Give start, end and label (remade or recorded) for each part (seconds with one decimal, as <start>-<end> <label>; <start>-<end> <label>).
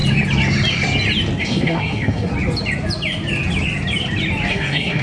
0.0-1.4 recorded; 1.4-2.3 remade; 2.3-4.5 recorded; 4.5-5.0 remade